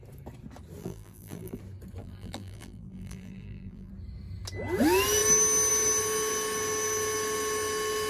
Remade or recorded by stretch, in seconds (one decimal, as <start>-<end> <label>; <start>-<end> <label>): 0.0-0.8 recorded; 0.8-1.6 remade; 1.6-2.0 recorded; 2.0-3.9 remade; 3.9-8.1 recorded